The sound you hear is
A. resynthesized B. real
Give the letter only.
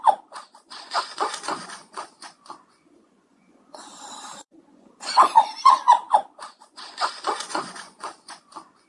A